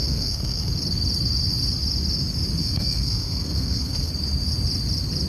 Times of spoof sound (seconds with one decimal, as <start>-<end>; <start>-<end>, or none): 0.0-0.7; 2.6-4.1